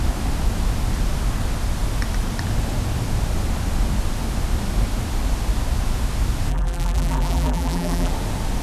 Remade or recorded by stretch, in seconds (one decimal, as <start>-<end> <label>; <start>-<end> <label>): 0.0-6.5 recorded; 6.5-8.1 remade; 8.1-8.6 recorded